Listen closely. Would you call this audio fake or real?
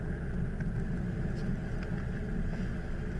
real